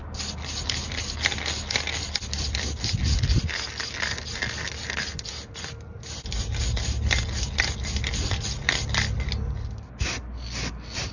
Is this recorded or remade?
recorded